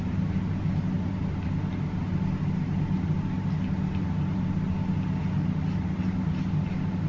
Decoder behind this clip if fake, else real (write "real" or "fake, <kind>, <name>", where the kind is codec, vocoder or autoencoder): real